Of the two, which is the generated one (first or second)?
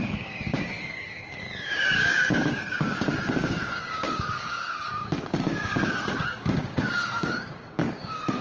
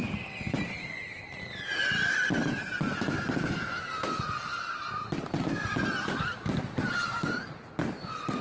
first